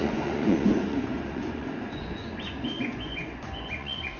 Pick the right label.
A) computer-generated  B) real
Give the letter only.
A